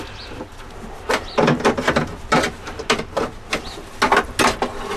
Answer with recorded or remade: recorded